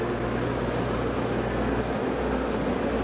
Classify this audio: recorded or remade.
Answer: recorded